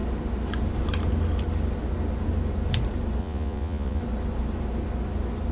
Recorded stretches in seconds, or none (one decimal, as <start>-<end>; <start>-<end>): 0.0-3.2; 4.0-5.5